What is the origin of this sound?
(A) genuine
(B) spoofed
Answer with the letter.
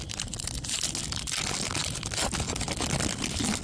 A